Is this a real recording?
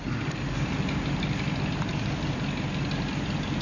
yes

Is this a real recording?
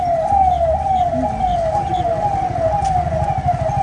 yes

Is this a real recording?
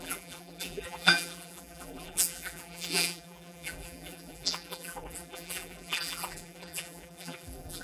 no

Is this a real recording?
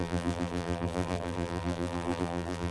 no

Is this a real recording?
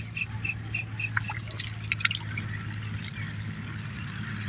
yes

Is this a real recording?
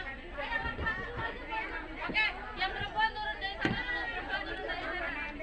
yes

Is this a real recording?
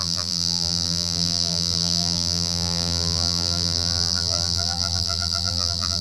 no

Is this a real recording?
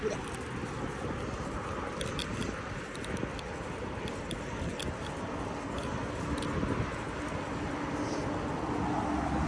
yes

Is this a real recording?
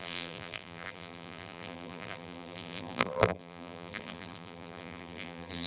no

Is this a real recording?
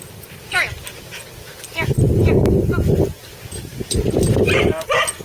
yes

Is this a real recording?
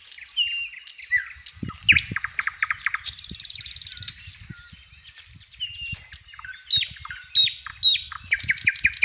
yes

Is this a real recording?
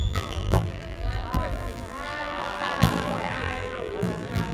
no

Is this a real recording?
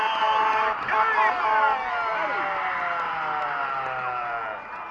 yes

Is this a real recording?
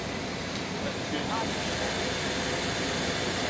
yes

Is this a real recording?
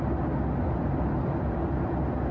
yes